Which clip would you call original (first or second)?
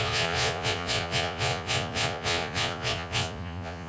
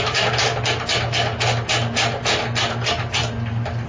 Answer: second